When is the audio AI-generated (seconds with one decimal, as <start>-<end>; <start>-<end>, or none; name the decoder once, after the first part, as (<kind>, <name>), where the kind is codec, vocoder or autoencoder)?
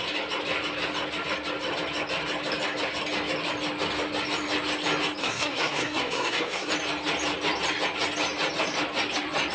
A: 5.2-6.7 (codec, SNAC)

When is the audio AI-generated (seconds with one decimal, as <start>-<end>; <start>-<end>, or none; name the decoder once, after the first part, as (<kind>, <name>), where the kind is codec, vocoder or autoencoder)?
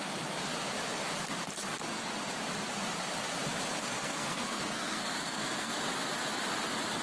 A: 3.8-5.7 (codec, SNAC)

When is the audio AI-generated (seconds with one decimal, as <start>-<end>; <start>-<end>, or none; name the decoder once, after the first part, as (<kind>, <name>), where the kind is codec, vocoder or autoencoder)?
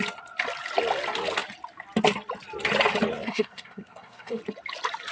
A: 3.1-4.4 (codec, SNAC)